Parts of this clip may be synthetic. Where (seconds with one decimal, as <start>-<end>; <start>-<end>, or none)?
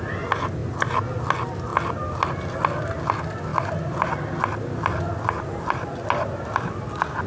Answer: none